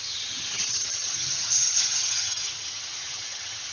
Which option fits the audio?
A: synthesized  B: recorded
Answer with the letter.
A